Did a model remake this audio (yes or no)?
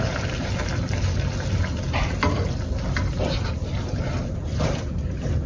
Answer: no